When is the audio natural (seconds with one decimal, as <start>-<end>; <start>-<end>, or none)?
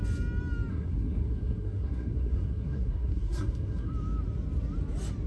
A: 0.0-0.7; 3.9-5.3